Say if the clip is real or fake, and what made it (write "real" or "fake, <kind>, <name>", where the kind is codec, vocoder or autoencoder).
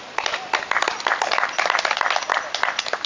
real